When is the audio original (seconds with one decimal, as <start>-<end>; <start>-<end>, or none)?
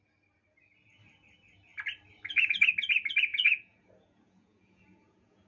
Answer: 0.0-3.3